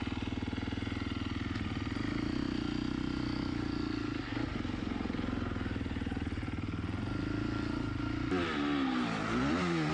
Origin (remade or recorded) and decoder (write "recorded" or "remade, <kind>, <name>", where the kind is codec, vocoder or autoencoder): recorded